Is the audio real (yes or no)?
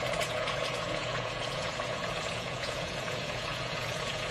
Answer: no